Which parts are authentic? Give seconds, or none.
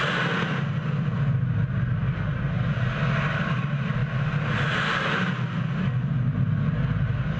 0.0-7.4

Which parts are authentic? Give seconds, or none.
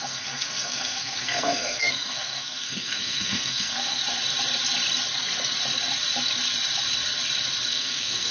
4.0-7.7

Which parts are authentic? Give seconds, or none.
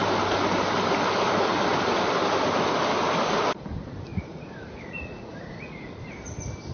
0.0-4.1; 5.9-6.7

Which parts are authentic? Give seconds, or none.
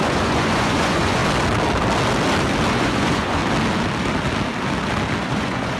1.2-2.7; 3.4-5.2